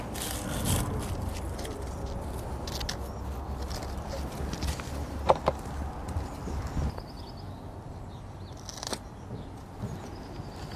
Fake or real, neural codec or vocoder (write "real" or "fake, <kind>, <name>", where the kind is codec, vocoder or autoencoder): real